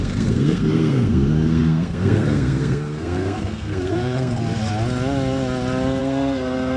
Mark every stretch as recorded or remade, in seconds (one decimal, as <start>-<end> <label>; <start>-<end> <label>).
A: 0.0-4.4 remade; 4.4-6.0 recorded; 6.0-6.8 remade